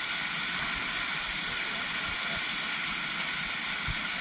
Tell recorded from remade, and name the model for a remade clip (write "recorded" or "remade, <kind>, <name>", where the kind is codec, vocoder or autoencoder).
recorded